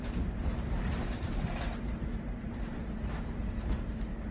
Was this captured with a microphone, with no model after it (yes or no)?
no